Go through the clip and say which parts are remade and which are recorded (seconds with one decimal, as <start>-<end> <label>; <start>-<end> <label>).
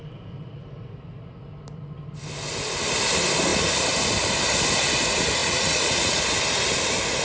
0.0-5.4 recorded; 5.4-6.2 remade; 6.2-7.2 recorded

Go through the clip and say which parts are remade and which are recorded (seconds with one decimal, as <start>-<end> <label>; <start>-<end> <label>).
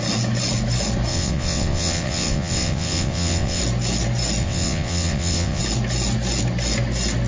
0.0-1.1 recorded; 1.1-3.6 remade; 3.6-4.4 recorded; 4.4-5.6 remade; 5.6-7.3 recorded